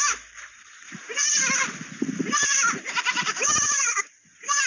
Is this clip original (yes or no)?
yes